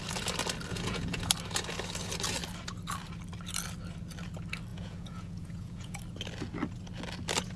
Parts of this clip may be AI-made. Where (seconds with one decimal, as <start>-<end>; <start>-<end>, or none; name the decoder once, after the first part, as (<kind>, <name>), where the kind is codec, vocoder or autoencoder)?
0.7-1.3 (vocoder, Vocos); 4.7-6.0